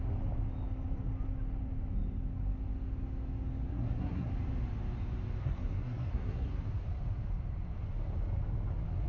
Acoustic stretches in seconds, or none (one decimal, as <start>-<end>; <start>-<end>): 0.0-3.7; 4.3-5.4; 6.7-9.1